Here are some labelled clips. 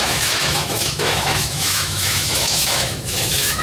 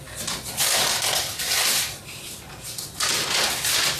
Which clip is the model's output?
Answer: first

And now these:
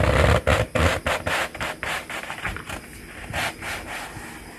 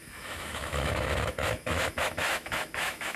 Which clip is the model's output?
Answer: second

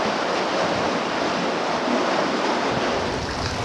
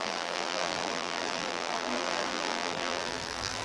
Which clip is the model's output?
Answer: second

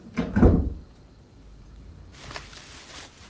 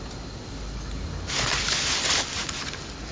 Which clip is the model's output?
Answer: first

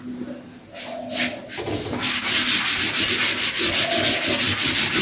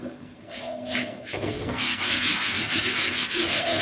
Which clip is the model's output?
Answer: second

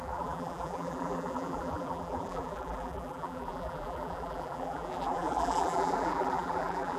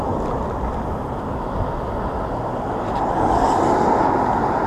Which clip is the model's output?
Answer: first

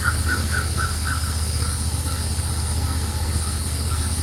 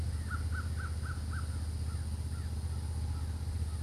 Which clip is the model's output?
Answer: first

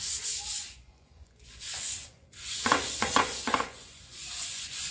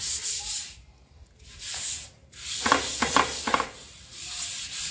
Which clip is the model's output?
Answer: first